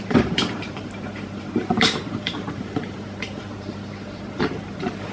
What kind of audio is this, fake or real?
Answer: fake